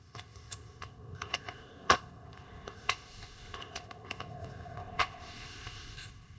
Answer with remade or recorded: remade